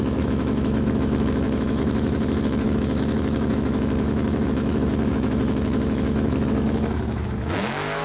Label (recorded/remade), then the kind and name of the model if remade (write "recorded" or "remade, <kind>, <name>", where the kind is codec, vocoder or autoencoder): remade, autoencoder, DAC-VAE